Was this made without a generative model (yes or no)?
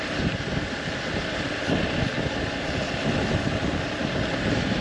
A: yes